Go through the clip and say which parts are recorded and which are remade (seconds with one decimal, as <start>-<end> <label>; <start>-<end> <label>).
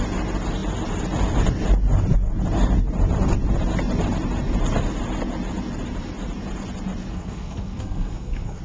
0.0-7.1 recorded; 7.1-8.6 remade